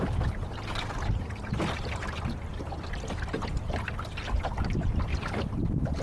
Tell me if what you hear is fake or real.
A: real